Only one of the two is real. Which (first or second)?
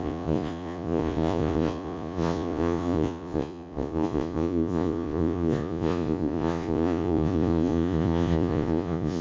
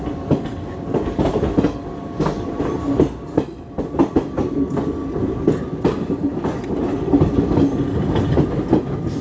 second